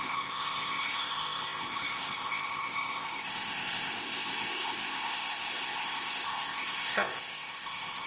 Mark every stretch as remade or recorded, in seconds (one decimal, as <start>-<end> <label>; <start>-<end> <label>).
0.0-8.1 remade